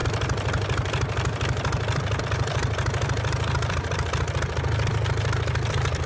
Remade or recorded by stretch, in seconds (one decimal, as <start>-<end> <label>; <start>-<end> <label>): 0.0-6.1 remade